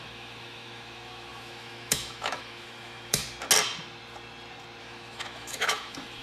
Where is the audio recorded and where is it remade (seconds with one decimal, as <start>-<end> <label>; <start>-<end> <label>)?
0.0-3.2 remade; 3.2-4.8 recorded; 4.8-6.2 remade